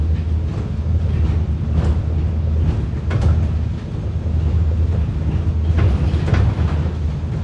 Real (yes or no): yes